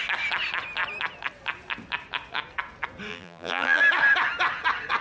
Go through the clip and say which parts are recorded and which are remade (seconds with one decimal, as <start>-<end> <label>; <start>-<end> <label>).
0.0-3.1 recorded; 3.1-3.8 remade; 3.8-5.0 recorded